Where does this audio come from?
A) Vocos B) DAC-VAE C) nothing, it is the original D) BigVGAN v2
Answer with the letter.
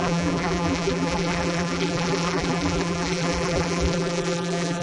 D